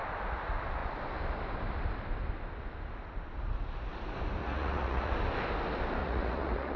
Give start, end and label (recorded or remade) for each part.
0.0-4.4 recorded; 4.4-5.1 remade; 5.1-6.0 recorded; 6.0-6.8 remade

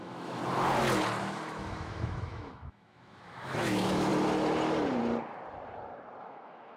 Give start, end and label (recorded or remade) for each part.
0.0-0.4 remade; 0.4-1.2 recorded; 1.2-4.1 remade; 4.1-6.2 recorded; 6.2-6.8 remade

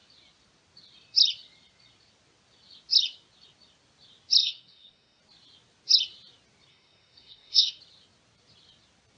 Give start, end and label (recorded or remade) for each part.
0.0-4.4 recorded; 4.4-5.2 remade; 5.2-6.7 recorded; 6.7-7.8 remade; 7.8-9.2 recorded

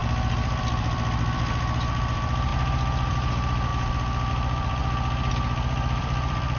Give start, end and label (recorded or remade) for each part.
0.0-2.5 remade; 2.5-3.1 recorded; 3.1-3.7 remade; 3.7-4.3 recorded; 4.3-4.8 remade; 4.8-5.3 recorded; 5.3-6.6 remade

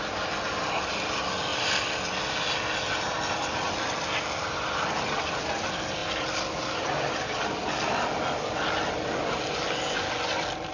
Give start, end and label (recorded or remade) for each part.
0.0-10.7 recorded

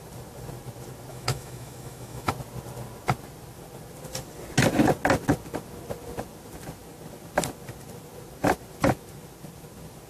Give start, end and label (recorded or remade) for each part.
0.0-1.1 recorded; 1.1-2.3 remade; 2.3-10.1 recorded